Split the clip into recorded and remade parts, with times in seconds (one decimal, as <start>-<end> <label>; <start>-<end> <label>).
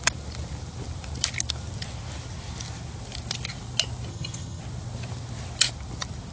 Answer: 0.0-4.1 recorded; 4.1-4.6 remade; 4.6-6.3 recorded